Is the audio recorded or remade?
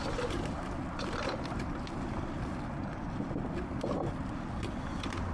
recorded